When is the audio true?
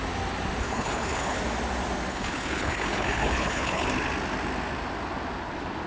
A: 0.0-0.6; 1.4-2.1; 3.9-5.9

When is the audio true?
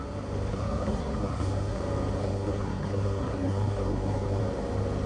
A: 0.0-0.5; 1.8-2.2; 4.4-5.1